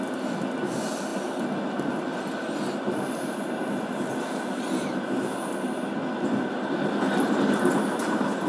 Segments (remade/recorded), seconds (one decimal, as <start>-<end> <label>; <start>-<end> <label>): 0.0-8.5 recorded